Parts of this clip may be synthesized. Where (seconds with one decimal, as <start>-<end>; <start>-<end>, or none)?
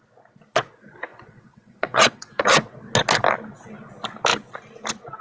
1.1-2.9